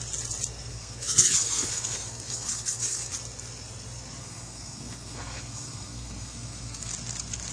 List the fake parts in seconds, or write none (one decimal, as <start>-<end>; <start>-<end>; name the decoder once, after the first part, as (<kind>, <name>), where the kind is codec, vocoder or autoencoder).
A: 0.7-3.1 (codec, SNAC); 4.2-6.9